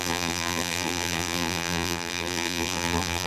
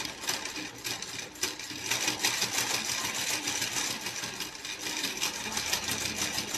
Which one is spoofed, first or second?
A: first